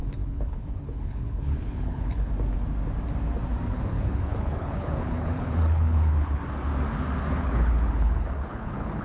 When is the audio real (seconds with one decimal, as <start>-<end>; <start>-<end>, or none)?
2.3-3.7; 6.4-7.4